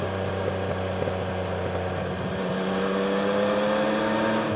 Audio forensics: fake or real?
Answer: real